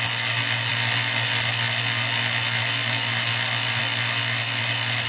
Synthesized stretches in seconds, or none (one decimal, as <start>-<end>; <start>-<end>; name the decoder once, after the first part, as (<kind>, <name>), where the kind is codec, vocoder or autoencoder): none